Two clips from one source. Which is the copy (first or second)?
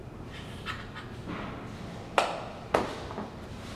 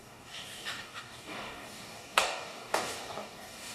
second